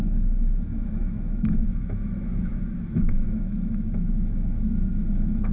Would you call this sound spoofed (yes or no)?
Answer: yes